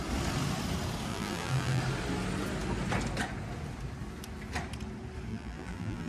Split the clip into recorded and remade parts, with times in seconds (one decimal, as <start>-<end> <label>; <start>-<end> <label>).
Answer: 0.0-1.1 recorded; 1.1-1.8 remade; 1.8-5.3 recorded; 5.3-6.1 remade